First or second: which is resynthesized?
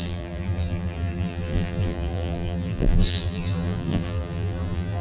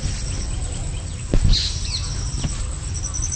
first